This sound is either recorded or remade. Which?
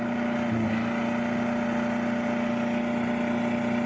recorded